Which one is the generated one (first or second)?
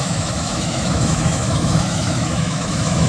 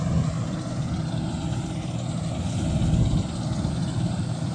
first